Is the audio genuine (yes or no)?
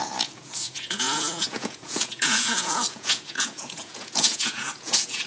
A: no